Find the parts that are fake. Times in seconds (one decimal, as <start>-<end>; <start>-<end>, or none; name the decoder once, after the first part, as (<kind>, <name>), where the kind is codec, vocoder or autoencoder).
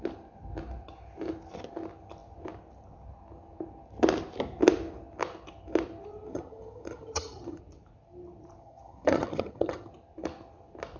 6.3-7.6 (vocoder, HiFi-GAN); 8.6-9.9